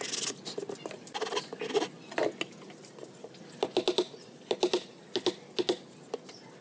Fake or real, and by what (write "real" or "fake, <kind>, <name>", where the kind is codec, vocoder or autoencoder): real